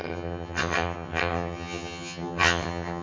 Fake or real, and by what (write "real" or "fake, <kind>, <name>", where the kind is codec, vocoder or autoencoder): fake, vocoder, HiFi-GAN